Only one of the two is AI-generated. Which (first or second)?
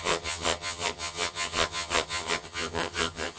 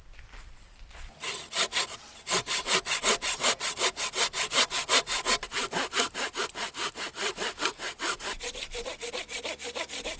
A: first